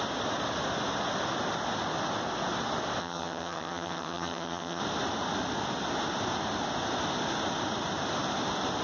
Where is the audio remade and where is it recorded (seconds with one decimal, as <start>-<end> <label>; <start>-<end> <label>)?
0.0-3.0 recorded; 3.0-4.8 remade; 4.8-8.8 recorded